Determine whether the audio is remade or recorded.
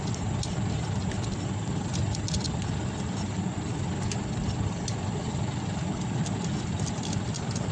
recorded